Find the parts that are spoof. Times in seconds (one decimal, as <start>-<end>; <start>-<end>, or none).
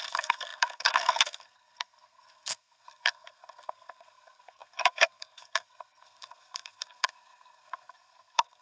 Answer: 0.0-8.6